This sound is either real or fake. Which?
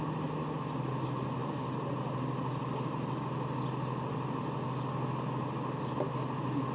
real